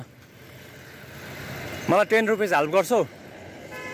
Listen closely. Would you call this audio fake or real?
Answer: real